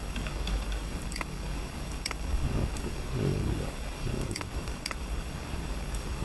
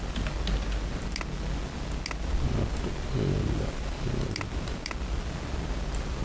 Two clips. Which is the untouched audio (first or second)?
second